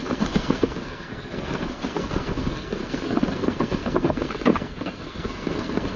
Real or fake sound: fake